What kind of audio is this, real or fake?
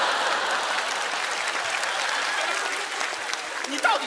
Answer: real